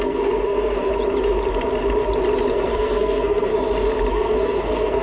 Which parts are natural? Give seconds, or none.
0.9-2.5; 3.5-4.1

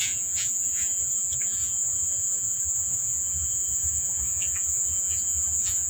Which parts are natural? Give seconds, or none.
none